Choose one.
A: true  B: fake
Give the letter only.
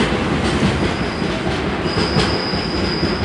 A